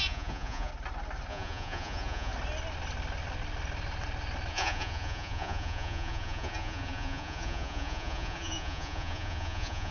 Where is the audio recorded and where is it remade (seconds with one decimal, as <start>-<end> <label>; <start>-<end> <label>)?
0.0-0.7 remade; 0.7-1.3 recorded; 1.3-2.3 remade; 2.3-4.5 recorded; 4.5-9.9 remade